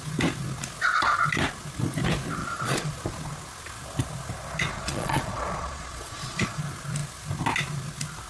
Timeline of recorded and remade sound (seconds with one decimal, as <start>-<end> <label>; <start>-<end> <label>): 0.0-2.4 recorded; 2.4-2.9 remade; 2.9-4.7 recorded; 4.7-6.6 remade; 6.6-8.3 recorded